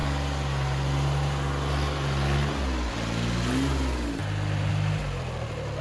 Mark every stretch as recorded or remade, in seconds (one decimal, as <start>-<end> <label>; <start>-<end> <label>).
0.0-5.8 recorded